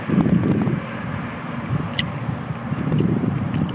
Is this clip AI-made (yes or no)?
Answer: yes